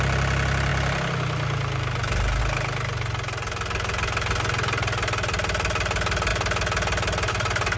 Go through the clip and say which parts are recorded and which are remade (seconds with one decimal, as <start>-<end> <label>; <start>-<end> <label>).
0.0-7.8 recorded